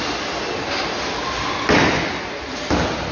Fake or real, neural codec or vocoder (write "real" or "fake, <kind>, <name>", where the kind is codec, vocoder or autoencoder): real